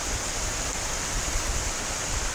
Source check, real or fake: real